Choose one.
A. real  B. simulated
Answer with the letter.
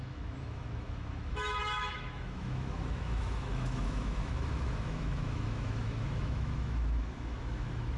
B